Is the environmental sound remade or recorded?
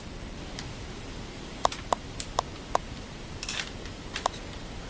recorded